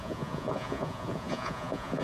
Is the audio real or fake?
fake